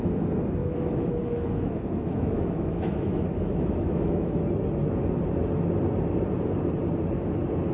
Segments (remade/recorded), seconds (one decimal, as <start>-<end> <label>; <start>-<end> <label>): 0.0-0.6 recorded; 0.6-4.4 remade; 4.4-7.7 recorded